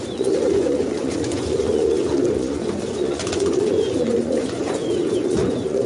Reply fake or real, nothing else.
fake